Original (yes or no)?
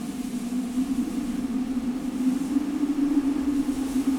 yes